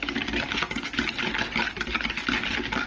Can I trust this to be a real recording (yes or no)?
yes